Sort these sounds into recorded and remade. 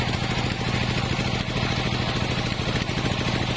recorded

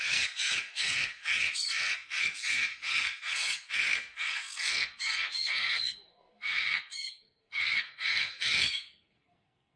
remade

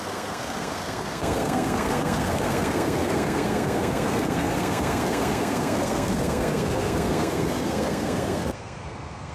remade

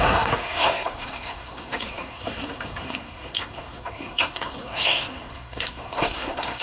remade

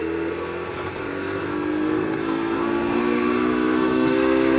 remade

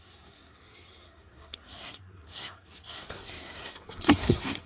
remade